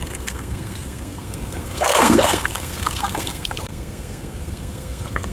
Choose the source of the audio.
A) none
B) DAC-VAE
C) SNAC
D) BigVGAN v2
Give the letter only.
C